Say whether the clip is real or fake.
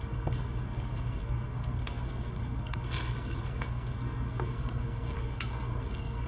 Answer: fake